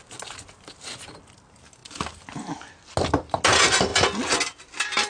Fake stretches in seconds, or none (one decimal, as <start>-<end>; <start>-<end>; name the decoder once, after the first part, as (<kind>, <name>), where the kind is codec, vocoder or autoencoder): none